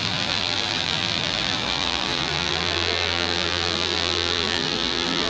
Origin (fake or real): fake